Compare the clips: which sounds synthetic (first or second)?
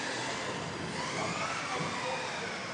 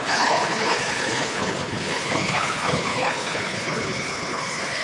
second